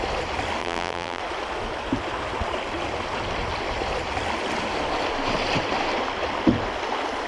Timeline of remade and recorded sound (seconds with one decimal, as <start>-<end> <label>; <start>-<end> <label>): 0.0-0.6 recorded; 0.6-1.2 remade; 1.2-7.3 recorded